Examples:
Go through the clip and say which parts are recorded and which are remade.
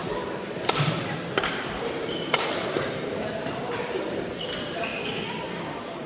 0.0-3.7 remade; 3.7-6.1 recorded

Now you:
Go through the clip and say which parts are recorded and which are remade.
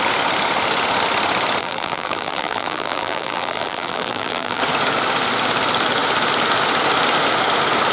0.0-1.6 recorded; 1.6-4.6 remade; 4.6-7.9 recorded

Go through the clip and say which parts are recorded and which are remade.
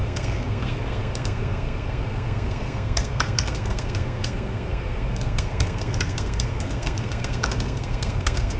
0.0-8.6 remade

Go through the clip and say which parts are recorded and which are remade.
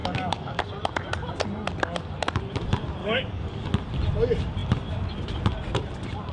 0.0-0.6 remade; 0.6-3.0 recorded; 3.0-3.7 remade; 3.7-6.3 recorded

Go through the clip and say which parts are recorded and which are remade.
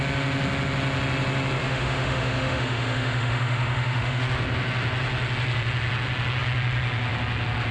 0.0-1.6 recorded; 1.6-4.2 remade; 4.2-7.7 recorded